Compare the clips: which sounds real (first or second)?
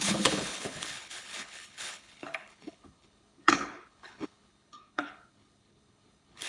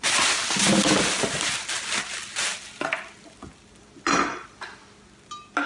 second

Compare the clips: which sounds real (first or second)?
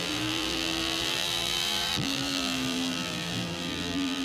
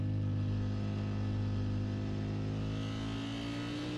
second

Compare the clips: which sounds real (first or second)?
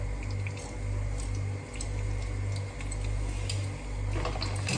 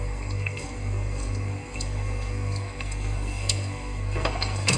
first